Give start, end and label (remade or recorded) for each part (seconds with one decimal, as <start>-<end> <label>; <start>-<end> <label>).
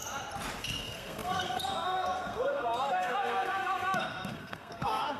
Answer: 0.0-0.6 recorded; 0.6-5.2 remade